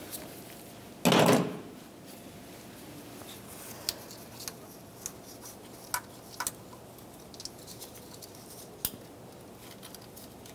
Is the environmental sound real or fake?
real